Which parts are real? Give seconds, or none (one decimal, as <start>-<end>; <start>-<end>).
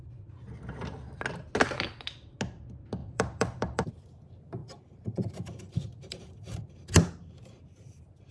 0.0-3.0; 3.9-4.6; 6.6-8.3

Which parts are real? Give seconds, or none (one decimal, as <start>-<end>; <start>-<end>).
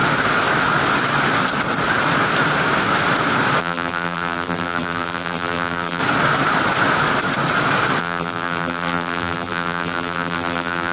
0.0-3.6; 6.0-8.0